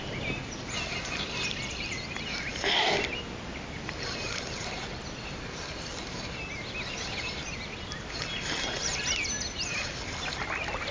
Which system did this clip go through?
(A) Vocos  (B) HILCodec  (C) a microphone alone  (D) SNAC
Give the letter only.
C